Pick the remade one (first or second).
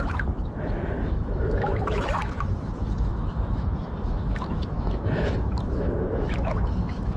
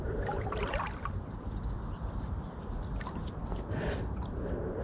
first